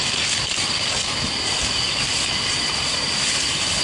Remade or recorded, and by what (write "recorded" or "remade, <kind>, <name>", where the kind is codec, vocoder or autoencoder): recorded